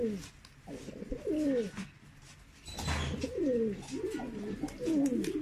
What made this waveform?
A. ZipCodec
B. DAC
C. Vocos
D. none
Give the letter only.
D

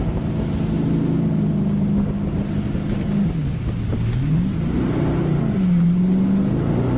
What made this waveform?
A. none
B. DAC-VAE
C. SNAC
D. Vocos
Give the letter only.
A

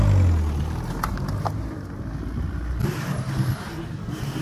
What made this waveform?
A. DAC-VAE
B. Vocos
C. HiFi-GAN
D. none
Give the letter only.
D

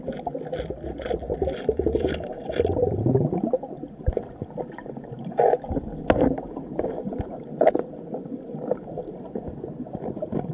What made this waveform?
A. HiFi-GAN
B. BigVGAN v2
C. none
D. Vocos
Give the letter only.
C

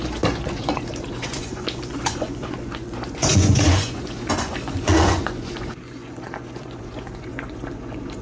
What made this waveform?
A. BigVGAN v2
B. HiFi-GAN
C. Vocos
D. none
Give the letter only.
C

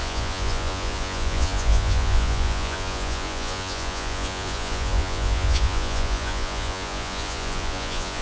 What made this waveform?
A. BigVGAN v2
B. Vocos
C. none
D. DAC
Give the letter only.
B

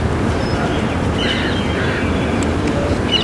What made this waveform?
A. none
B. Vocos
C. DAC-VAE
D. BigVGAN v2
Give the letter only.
A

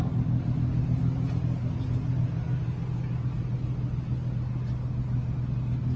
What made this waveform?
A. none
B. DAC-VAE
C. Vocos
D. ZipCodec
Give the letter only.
A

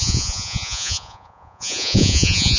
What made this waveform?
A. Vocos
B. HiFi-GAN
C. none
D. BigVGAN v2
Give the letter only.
A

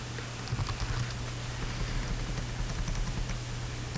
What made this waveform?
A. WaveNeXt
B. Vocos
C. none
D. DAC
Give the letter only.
C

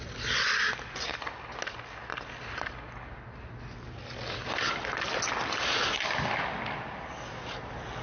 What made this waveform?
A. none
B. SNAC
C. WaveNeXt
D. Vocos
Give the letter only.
A